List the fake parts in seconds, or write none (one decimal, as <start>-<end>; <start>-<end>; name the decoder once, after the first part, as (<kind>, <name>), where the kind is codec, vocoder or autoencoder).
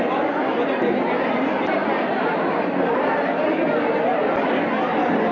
none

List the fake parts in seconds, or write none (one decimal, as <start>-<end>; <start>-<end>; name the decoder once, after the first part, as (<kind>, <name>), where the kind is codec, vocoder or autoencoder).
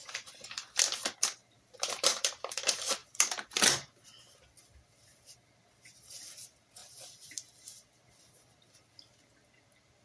1.4-2.2 (vocoder, BigVGAN v2)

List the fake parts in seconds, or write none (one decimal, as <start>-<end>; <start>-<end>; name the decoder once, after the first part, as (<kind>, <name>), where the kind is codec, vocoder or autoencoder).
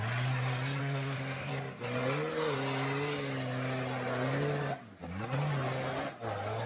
0.8-1.5 (codec, SNAC)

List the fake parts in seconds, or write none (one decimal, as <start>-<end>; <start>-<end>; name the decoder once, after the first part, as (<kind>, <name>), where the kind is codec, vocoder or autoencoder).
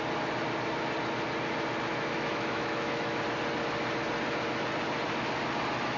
1.9-3.2 (autoencoder, DAC-VAE)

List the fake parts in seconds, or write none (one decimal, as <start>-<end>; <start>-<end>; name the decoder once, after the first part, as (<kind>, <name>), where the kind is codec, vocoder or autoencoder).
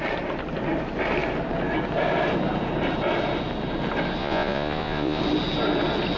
4.2-5.2 (vocoder, Vocos)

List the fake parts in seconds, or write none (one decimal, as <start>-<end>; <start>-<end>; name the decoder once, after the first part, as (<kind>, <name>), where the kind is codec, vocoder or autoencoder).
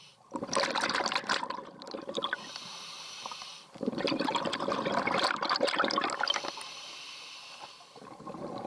3.5-4.7 (vocoder, BigVGAN v2)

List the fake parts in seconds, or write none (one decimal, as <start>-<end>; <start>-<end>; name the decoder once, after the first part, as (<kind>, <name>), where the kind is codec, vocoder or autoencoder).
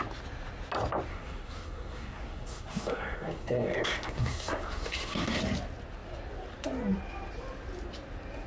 1.1-5.4 (codec, SNAC)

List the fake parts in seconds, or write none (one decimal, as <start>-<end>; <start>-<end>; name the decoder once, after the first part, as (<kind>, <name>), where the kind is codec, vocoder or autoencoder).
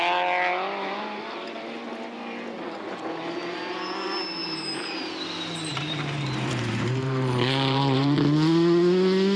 4.4-5.1 (vocoder, BigVGAN v2); 5.7-8.2